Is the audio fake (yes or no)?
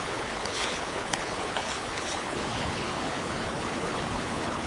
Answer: yes